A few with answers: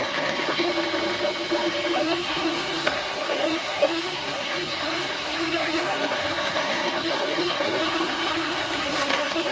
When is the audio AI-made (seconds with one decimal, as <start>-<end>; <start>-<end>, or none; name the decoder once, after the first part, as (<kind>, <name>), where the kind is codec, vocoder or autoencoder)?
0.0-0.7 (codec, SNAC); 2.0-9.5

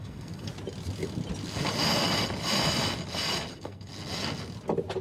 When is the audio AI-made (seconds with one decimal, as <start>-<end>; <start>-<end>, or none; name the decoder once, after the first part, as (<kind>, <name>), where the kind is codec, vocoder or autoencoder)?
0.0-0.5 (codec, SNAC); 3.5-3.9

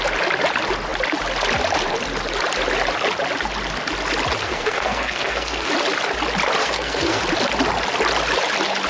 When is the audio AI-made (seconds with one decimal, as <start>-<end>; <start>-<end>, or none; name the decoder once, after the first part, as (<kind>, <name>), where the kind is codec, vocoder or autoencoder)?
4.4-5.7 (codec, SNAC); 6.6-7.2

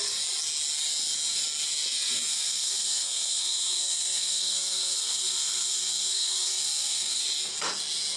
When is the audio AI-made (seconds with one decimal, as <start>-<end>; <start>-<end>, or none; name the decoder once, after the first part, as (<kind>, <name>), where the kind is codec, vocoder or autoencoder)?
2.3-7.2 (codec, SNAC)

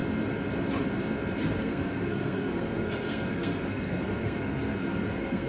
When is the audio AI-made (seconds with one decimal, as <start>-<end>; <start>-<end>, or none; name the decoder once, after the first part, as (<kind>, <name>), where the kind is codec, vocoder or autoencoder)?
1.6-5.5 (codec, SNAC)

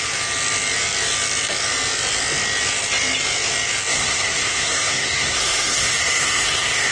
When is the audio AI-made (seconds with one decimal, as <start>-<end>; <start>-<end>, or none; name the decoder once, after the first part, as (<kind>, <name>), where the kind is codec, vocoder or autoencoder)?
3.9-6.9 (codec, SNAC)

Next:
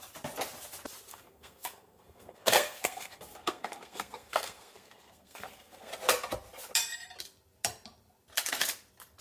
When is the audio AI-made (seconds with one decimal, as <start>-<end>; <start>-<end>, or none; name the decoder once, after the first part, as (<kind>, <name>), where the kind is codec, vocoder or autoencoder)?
1.1-5.9 (codec, SNAC)